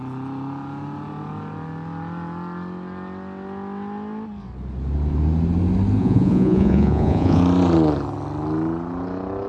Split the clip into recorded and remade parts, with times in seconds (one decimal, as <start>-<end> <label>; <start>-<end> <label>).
0.0-6.0 recorded; 6.0-7.4 remade; 7.4-9.5 recorded